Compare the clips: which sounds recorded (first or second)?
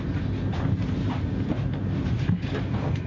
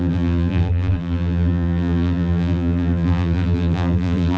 first